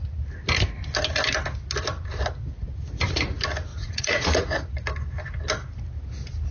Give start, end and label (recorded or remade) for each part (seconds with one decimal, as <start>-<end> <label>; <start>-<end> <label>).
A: 0.0-3.7 recorded; 3.7-4.5 remade; 4.5-6.5 recorded